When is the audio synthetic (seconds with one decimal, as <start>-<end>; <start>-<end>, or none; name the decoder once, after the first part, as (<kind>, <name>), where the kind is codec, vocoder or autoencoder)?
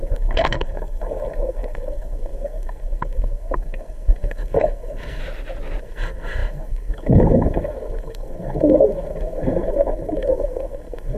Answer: 0.0-5.2 (codec, SNAC); 5.8-11.2